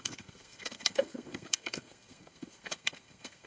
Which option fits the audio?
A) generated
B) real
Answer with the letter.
A